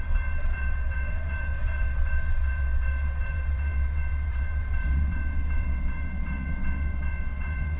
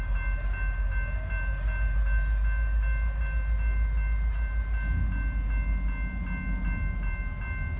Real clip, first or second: second